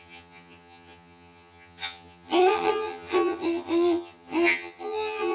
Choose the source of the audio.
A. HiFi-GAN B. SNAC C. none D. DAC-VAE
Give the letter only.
A